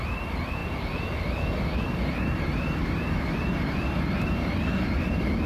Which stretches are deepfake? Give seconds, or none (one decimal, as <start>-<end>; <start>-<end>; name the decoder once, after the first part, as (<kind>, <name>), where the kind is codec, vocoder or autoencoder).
none